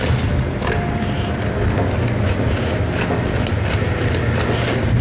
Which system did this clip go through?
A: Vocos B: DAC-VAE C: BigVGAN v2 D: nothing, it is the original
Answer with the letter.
D